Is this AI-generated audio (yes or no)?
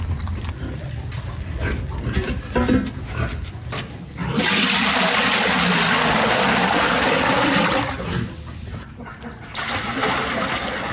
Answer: no